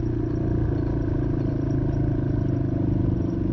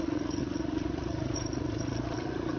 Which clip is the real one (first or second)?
first